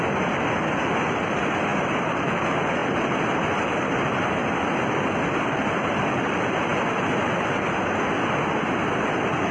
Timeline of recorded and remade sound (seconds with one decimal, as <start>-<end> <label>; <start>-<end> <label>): 0.0-1.7 recorded; 1.7-2.4 remade; 2.4-9.5 recorded